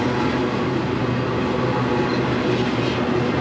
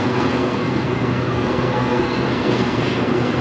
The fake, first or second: second